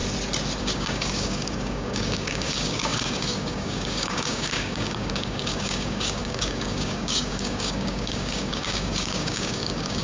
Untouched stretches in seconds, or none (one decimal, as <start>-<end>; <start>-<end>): 0.0-0.6